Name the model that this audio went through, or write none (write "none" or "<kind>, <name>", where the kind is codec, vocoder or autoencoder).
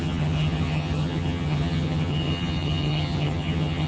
vocoder, HiFi-GAN